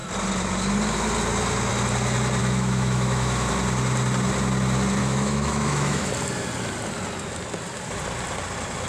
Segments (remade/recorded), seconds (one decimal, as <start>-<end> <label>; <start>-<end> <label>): 0.0-2.4 recorded; 2.4-3.5 remade; 3.5-5.0 recorded; 5.0-6.1 remade; 6.1-8.9 recorded